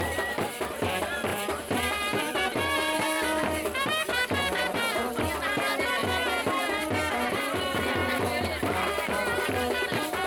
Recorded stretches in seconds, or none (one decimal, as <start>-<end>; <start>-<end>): 6.0-6.7

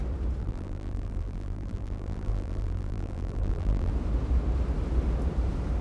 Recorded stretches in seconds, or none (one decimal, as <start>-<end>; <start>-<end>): 0.0-0.4; 3.9-5.8